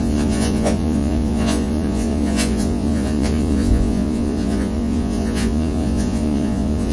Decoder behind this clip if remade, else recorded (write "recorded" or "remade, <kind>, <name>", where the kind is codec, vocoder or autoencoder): remade, vocoder, Vocos